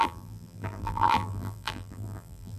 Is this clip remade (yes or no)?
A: yes